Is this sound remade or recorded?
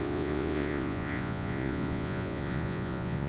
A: remade